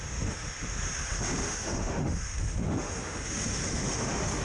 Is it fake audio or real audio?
fake